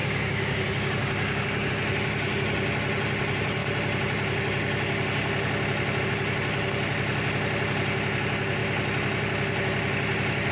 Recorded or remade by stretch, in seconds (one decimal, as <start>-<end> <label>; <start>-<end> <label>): 0.0-1.7 remade; 1.7-10.5 recorded